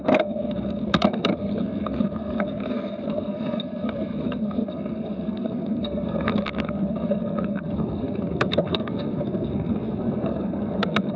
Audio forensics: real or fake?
fake